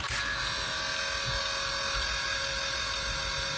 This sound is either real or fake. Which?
real